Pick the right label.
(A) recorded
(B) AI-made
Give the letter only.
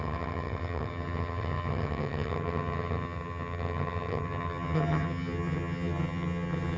B